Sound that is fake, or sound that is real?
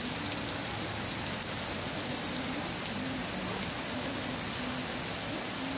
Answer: real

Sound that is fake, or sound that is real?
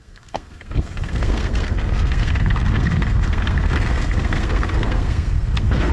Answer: fake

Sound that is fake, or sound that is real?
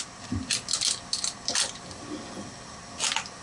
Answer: real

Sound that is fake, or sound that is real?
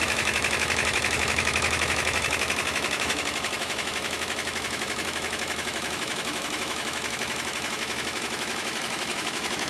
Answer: fake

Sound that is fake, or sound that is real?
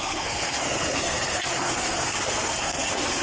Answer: fake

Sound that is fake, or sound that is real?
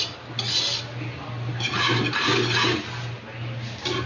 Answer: real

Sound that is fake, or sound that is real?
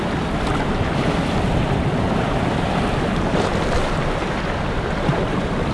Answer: real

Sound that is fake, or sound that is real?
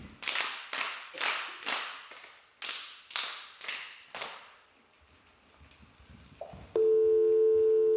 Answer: real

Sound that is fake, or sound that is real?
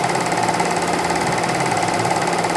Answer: real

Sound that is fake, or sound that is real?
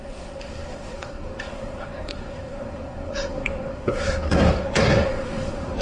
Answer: fake